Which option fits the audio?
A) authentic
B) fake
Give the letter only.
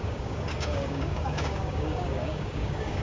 B